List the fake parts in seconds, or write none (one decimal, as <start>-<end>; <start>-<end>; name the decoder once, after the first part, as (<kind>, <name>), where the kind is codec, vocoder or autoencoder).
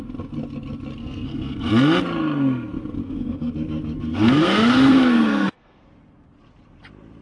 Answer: 1.0-1.7 (codec, SNAC); 3.0-5.9